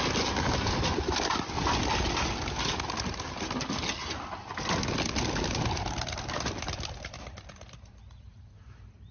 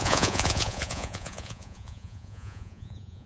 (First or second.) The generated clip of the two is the second